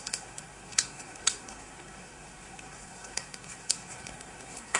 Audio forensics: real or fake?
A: fake